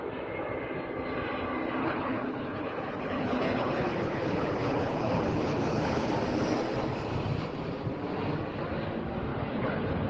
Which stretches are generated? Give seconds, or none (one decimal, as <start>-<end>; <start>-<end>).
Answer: 1.8-6.1; 9.3-10.1